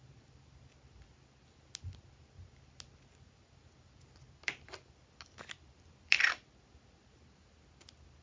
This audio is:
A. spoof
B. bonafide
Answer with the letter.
B